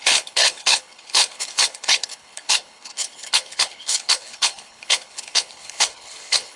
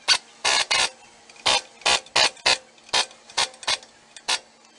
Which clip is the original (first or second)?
second